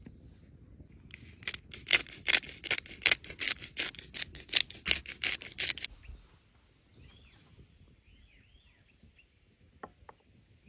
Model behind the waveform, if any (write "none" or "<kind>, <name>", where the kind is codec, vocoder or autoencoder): none